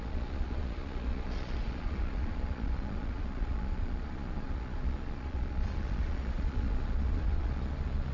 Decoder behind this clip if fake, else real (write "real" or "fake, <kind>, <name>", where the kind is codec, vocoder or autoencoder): fake, vocoder, Vocos